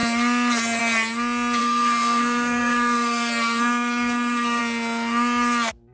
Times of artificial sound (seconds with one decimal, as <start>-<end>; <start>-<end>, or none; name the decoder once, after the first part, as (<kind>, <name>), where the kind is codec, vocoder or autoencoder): 1.6-4.6 (codec, SNAC)